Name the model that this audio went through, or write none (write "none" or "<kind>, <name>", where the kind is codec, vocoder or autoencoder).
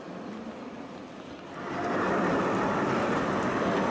none